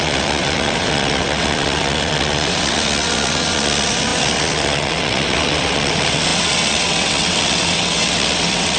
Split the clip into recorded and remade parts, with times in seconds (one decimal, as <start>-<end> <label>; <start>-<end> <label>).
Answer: 0.0-8.8 remade